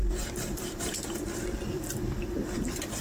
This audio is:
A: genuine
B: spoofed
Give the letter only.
B